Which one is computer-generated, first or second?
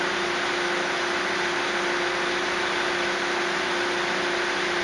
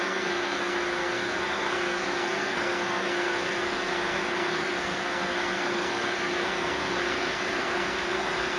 second